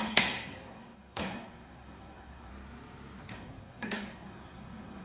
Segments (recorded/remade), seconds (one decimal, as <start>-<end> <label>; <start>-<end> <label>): 0.0-2.5 remade; 2.5-3.3 recorded; 3.3-5.0 remade